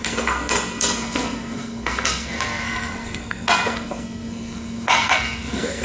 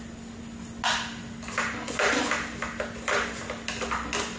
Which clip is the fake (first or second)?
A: first